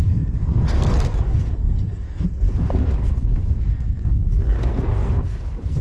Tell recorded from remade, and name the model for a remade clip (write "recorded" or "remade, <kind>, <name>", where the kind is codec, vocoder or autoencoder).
remade, codec, SNAC